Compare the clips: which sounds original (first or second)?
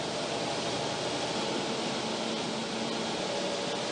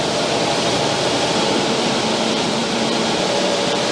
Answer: first